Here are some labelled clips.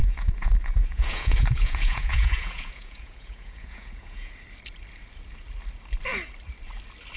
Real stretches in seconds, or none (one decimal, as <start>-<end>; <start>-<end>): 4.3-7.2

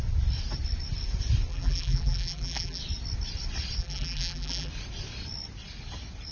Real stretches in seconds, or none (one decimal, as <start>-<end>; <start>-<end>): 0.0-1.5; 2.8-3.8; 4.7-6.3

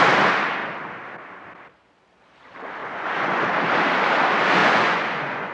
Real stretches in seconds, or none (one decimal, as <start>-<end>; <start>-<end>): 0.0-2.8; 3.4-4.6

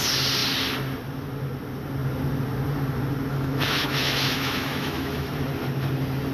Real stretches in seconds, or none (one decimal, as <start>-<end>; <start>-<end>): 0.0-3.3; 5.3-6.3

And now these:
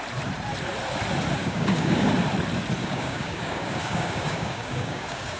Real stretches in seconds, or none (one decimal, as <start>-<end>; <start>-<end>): 0.0-1.4; 2.1-2.8